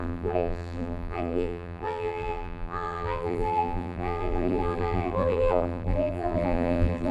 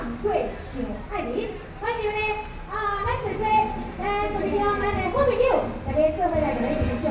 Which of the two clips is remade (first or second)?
first